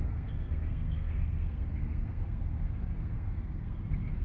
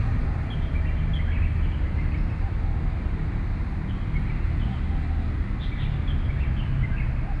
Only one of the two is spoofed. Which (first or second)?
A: first